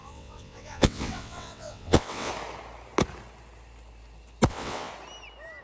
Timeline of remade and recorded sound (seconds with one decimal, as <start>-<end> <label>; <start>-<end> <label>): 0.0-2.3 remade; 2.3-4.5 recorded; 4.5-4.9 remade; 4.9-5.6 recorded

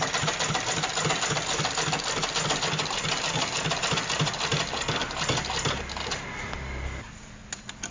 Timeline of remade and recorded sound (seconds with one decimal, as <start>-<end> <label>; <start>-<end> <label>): 0.0-7.9 recorded

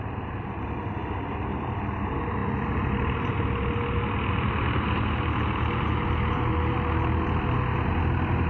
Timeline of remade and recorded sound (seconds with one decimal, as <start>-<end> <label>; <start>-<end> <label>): 0.0-8.5 recorded